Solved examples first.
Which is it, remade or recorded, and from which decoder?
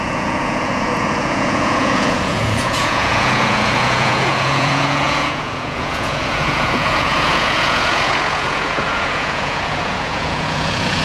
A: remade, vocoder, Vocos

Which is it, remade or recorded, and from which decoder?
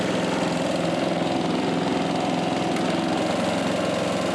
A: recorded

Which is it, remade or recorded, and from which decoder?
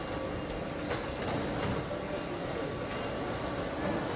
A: recorded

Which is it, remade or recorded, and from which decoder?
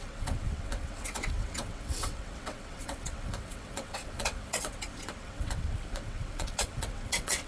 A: remade, vocoder, WaveNeXt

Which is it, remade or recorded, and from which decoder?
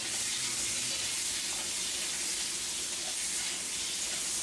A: recorded